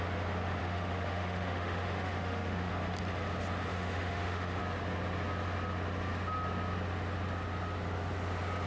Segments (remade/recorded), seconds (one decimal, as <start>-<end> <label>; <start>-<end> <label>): 0.0-0.6 recorded; 0.6-2.7 remade; 2.7-3.7 recorded; 3.7-4.6 remade; 4.6-8.7 recorded